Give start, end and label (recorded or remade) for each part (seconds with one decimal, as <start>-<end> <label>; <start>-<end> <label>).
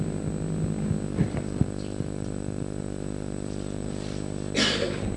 0.0-1.1 recorded; 1.1-4.2 remade; 4.2-5.2 recorded